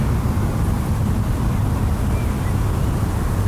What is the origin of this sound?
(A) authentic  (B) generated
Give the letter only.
A